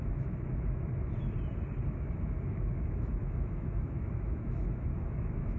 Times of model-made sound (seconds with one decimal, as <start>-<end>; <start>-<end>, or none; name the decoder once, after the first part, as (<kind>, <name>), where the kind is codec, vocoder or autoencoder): 0.0-0.9 (autoencoder, DAC-VAE); 1.9-5.6